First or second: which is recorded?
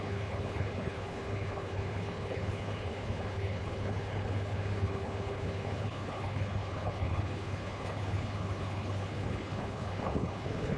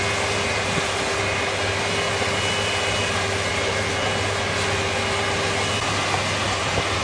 second